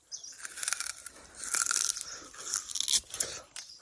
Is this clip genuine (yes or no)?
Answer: yes